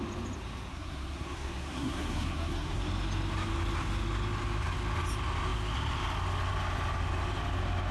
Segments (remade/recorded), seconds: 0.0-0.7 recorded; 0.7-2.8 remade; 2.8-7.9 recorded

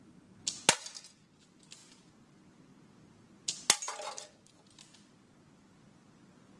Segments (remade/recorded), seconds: 0.0-6.6 recorded